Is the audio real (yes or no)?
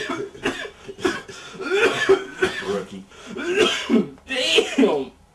yes